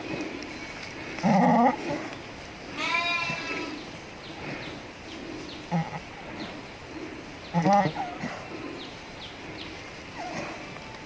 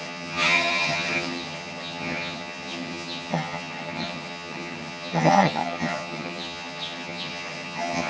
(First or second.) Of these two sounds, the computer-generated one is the second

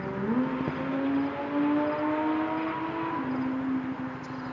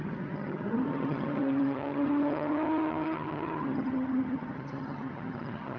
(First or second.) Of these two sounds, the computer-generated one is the second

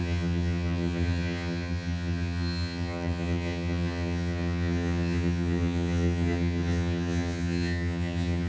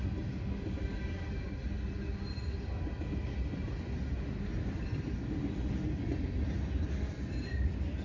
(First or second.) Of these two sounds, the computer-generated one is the first